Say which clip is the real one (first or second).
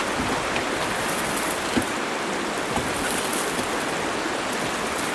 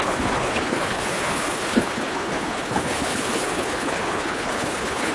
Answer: first